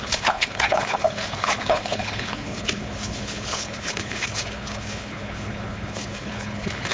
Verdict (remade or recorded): remade